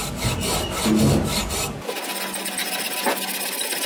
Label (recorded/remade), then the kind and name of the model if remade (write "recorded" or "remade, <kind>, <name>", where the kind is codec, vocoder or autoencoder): recorded